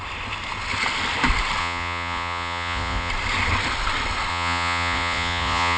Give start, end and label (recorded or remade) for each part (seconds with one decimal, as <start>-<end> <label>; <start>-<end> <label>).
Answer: 0.0-1.6 recorded; 1.6-3.1 remade; 3.1-4.3 recorded; 4.3-5.8 remade